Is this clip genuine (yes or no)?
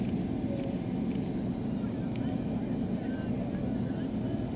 yes